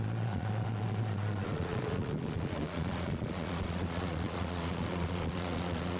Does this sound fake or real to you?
fake